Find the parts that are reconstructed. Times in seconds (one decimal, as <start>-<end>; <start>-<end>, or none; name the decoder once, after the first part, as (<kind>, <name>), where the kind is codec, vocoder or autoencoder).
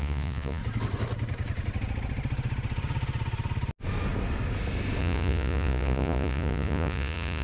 0.0-0.6 (vocoder, Vocos); 5.0-7.4